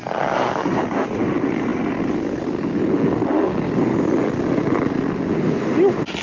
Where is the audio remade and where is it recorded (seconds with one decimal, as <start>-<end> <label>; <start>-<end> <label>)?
0.0-6.2 recorded